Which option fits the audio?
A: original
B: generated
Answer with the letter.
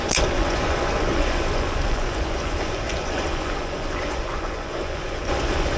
B